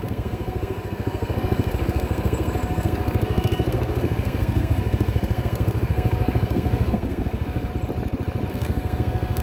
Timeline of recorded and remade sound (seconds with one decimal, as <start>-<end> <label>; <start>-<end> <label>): 0.0-7.7 remade; 7.7-8.5 recorded; 8.5-9.4 remade

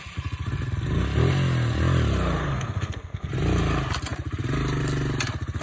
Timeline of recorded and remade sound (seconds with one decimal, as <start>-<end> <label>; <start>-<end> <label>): 0.0-2.4 recorded; 2.4-3.3 remade; 3.3-5.6 recorded

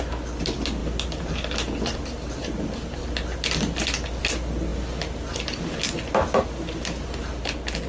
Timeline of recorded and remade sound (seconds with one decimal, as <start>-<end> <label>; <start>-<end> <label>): 0.0-7.9 recorded

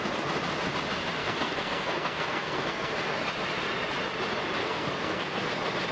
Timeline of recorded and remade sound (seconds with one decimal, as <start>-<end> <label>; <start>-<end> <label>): 0.0-1.2 recorded; 1.2-2.9 remade; 2.9-4.6 recorded; 4.6-5.4 remade; 5.4-5.9 recorded

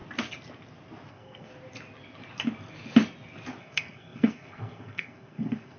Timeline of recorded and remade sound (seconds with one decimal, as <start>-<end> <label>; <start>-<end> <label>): 0.0-1.1 recorded; 1.1-1.5 remade; 1.5-3.6 recorded; 3.6-5.8 remade

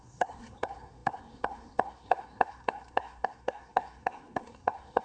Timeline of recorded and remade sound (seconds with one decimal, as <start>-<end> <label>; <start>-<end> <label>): 0.0-5.0 remade

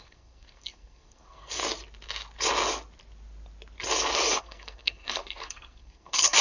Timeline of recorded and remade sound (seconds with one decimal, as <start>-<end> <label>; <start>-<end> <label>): 0.0-1.6 remade; 1.6-4.4 recorded; 4.4-6.4 remade

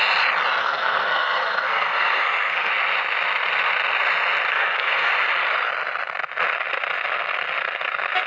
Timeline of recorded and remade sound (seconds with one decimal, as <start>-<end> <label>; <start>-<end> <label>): 0.0-0.6 recorded; 0.6-2.7 remade; 2.7-4.5 recorded; 4.5-5.1 remade; 5.1-8.3 recorded